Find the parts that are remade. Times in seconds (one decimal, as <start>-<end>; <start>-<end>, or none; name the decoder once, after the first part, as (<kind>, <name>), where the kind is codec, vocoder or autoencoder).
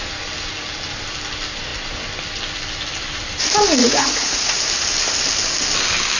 3.8-4.6 (vocoder, Vocos)